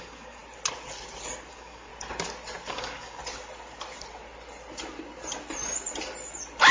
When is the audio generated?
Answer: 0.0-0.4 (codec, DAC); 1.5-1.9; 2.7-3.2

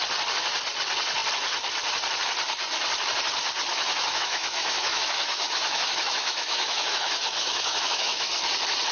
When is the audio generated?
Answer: 3.7-8.3 (autoencoder, DAC-VAE)

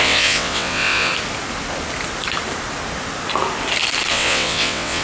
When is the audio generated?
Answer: 0.0-1.1 (vocoder, WaveNeXt); 4.1-5.0

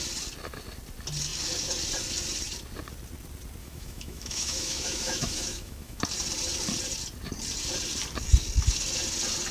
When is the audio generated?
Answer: 3.6-6.0 (autoencoder, DAC-VAE)

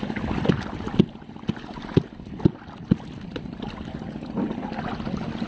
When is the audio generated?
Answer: none

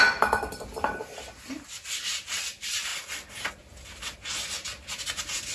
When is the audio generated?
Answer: none

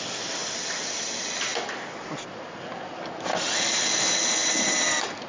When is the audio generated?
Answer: 0.4-1.1 (vocoder, BigVGAN v2); 1.5-3.3; 4.4-5.3

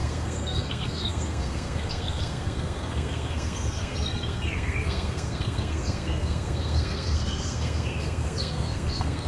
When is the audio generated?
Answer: 0.0-9.3 (codec, SNAC)